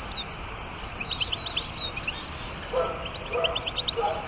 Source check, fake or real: real